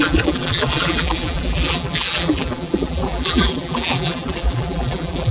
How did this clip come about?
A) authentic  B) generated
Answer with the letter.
B